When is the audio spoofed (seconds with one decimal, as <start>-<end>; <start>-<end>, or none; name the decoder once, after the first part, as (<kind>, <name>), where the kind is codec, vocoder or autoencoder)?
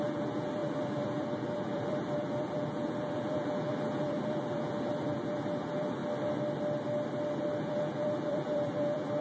0.0-6.0 (vocoder, BigVGAN v2); 7.6-9.2